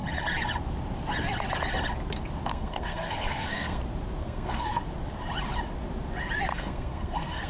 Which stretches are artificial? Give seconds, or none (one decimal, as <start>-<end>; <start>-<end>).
2.5-3.8; 4.2-4.8; 6.5-7.5